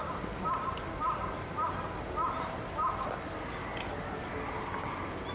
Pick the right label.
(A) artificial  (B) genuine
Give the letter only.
B